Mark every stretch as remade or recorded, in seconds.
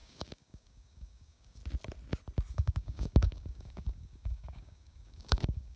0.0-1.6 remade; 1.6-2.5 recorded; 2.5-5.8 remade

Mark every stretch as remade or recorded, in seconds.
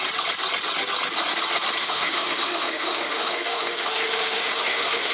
0.0-1.8 recorded; 1.8-5.1 remade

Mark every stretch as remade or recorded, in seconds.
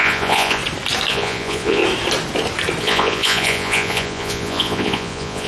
0.0-0.6 remade; 0.6-1.1 recorded; 1.1-1.8 remade; 1.8-2.8 recorded; 2.8-5.5 remade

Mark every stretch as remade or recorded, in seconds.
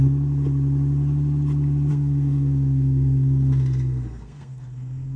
0.0-1.9 recorded; 1.9-5.2 remade